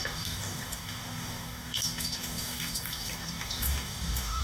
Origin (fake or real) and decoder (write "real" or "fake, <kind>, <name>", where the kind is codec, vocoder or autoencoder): fake, codec, DAC